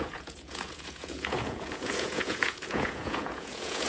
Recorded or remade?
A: remade